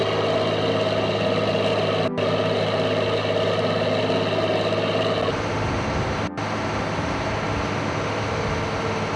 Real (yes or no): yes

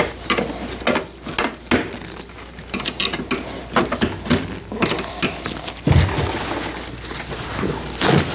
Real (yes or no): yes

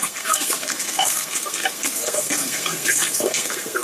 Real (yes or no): no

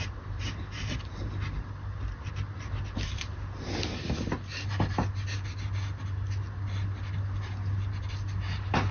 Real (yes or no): yes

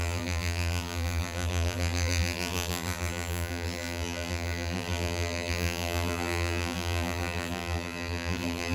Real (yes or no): no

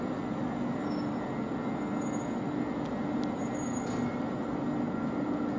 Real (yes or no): yes